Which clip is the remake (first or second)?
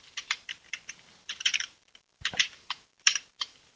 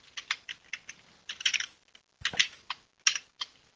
first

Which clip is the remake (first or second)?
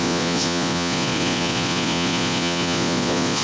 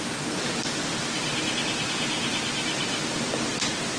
first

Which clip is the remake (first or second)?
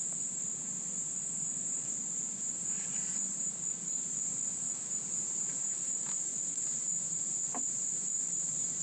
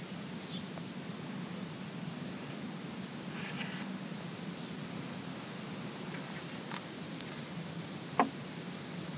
first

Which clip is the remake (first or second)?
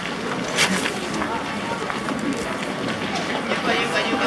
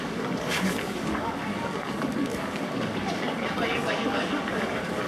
second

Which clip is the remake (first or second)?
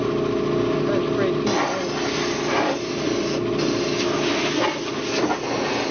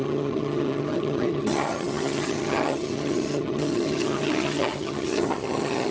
second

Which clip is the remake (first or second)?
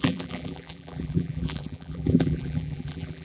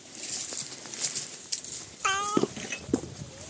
first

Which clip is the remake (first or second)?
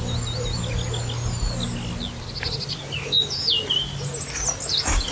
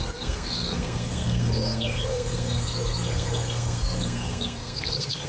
second